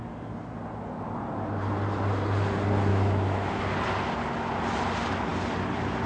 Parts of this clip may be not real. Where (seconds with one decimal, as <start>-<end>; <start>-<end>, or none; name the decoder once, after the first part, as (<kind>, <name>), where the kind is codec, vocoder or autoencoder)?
2.9-3.6 (autoencoder, DAC-VAE)